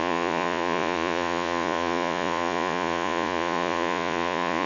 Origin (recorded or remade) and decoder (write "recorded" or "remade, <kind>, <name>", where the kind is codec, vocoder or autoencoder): remade, vocoder, Vocos